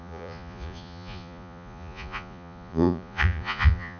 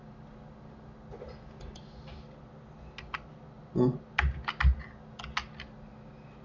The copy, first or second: first